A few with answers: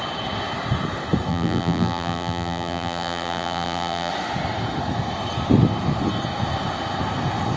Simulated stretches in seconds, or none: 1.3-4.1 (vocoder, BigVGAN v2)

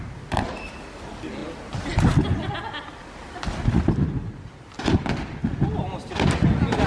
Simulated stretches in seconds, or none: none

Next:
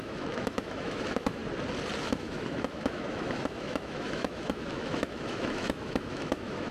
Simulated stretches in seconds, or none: 0.0-1.4 (autoencoder, DAC-VAE); 2.0-6.7

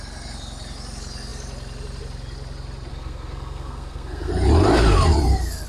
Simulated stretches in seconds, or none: 2.9-4.3 (codec, SNAC)

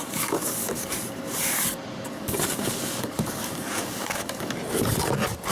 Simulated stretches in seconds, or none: 0.0-0.9 (codec, DAC); 2.1-4.5